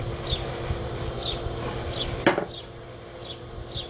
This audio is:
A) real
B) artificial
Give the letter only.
A